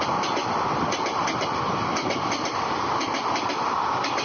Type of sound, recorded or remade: recorded